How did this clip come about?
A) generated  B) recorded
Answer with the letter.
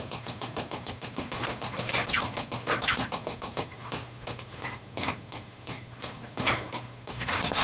A